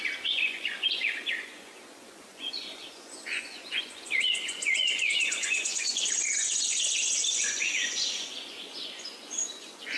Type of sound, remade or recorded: remade